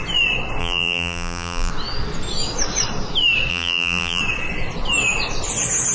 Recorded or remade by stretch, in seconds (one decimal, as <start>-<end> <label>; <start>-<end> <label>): 0.0-0.6 recorded; 0.6-1.7 remade; 1.7-3.5 recorded; 3.5-4.2 remade; 4.2-5.9 recorded